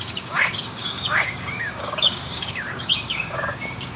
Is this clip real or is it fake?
fake